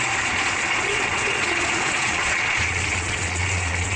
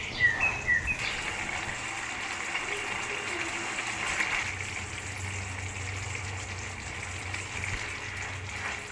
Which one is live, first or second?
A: second